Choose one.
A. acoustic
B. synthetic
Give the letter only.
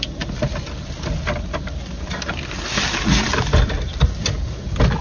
A